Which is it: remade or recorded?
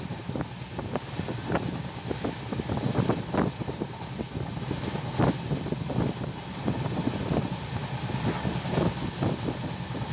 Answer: recorded